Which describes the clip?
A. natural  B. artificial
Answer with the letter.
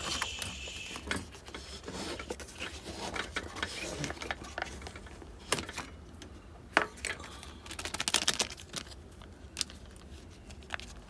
A